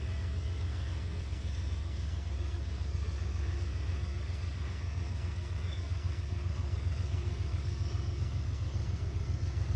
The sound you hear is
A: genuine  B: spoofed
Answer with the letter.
B